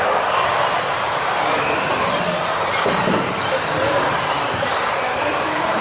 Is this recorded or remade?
remade